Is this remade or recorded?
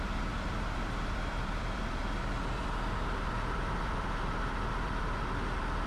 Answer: remade